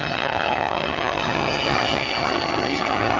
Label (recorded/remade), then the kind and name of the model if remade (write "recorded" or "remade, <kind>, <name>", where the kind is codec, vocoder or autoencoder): remade, vocoder, HiFi-GAN